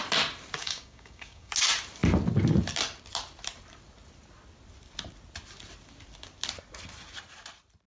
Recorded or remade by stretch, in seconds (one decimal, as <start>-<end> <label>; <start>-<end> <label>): 0.0-0.6 recorded; 0.6-1.5 remade; 1.5-7.9 recorded

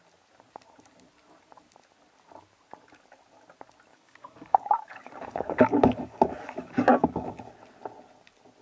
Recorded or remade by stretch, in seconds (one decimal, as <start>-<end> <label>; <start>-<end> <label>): 0.0-3.9 recorded; 3.9-7.5 remade; 7.5-8.6 recorded

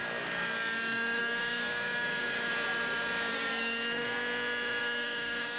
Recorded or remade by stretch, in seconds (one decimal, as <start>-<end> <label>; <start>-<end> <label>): 0.0-1.2 recorded; 1.2-2.5 remade; 2.5-3.3 recorded; 3.3-3.8 remade; 3.8-4.8 recorded; 4.8-5.6 remade